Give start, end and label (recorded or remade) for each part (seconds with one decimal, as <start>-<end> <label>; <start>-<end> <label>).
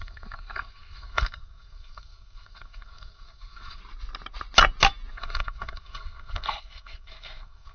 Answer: 0.0-3.8 remade; 3.8-5.1 recorded; 5.1-7.7 remade